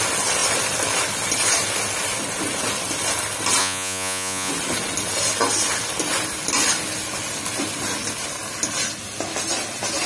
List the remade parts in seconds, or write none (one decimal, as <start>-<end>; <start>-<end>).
3.6-4.5